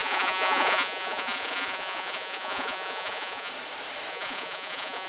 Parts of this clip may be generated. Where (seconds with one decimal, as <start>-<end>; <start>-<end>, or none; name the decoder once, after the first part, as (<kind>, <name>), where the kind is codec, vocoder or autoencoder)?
0.0-3.5 (vocoder, Vocos); 4.1-5.1